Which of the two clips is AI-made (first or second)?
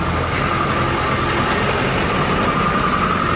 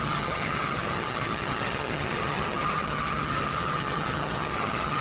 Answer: second